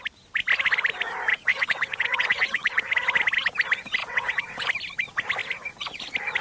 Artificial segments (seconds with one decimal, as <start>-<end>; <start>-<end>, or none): 1.3-2.8; 4.0-4.6